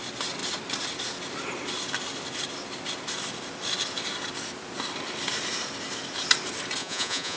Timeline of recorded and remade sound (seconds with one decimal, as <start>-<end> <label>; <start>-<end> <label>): 0.0-6.8 recorded; 6.8-7.4 remade